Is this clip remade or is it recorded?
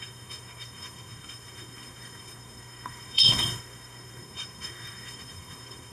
remade